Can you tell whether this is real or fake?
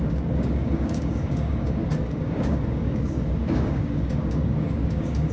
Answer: fake